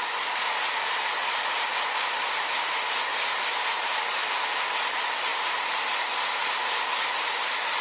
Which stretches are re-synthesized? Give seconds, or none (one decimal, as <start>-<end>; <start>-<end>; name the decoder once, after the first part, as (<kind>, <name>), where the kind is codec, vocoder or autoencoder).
none